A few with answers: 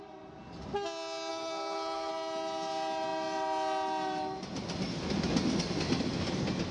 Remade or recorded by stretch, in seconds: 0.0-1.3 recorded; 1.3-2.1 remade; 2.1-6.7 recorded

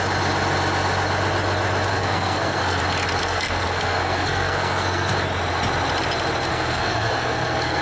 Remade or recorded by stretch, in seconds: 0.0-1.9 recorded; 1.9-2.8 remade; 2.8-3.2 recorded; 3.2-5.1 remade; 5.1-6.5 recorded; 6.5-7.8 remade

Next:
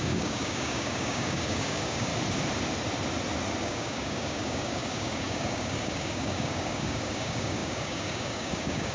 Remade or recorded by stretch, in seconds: 0.0-2.1 remade; 2.1-3.6 recorded; 3.6-8.9 remade